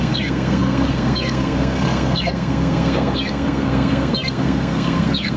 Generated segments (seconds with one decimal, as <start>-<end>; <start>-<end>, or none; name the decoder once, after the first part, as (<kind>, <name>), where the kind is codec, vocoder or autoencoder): 0.0-5.4 (codec, SNAC)